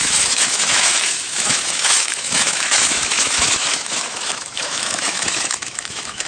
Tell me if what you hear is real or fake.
fake